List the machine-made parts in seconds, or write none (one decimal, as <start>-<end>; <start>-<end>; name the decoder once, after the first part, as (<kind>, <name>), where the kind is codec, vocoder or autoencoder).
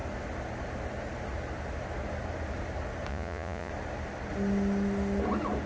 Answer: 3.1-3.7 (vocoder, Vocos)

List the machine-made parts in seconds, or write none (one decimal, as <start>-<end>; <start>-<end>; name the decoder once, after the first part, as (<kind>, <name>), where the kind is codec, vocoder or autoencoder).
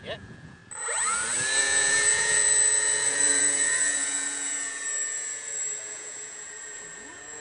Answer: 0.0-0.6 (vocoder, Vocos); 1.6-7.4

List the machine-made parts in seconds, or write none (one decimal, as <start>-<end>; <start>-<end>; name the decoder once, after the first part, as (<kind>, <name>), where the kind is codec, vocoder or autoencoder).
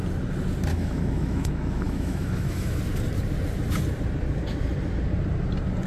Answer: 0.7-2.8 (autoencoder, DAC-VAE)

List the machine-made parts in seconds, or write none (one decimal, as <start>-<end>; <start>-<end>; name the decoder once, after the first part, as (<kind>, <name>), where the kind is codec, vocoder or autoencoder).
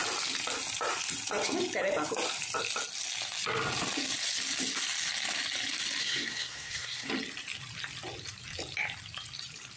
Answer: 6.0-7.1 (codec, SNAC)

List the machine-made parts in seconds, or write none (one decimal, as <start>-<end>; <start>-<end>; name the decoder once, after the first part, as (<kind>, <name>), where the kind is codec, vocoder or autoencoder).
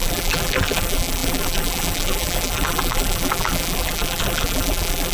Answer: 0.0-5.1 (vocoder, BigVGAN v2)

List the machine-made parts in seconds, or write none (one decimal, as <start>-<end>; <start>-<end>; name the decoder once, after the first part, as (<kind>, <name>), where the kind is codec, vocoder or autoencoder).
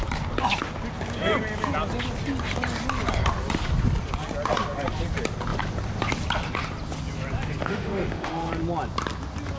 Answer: 7.6-8.5 (autoencoder, DAC-VAE)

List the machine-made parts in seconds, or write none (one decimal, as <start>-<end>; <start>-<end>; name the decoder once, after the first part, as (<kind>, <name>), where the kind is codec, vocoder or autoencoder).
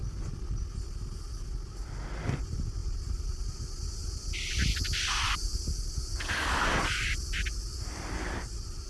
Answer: none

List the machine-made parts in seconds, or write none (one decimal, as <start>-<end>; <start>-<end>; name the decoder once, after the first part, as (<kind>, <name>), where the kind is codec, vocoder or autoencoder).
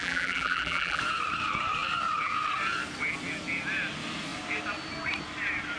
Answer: 0.0-1.0 (vocoder, BigVGAN v2)